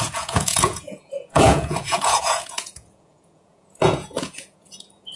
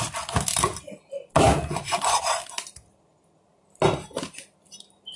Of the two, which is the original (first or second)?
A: second